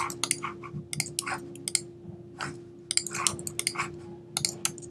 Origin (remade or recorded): recorded